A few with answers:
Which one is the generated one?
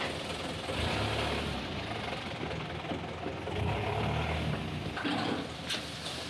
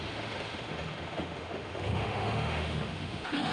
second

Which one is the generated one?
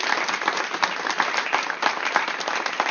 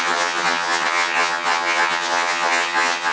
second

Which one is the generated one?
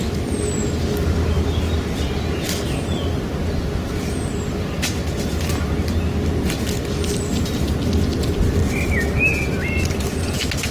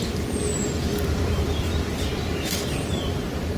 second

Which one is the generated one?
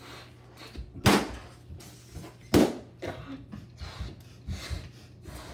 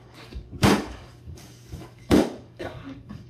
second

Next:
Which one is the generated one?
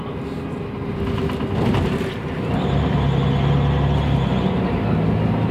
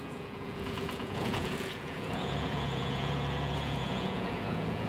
second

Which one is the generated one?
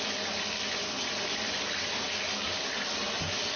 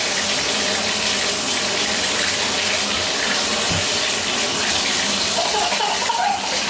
second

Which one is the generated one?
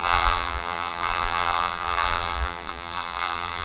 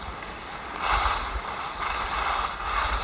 first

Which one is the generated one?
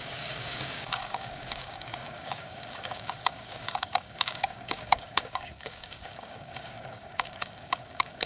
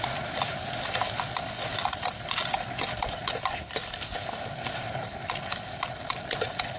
first